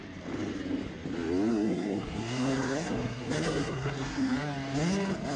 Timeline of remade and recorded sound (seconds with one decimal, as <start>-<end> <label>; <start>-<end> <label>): 0.0-1.5 recorded; 1.5-4.3 remade; 4.3-5.4 recorded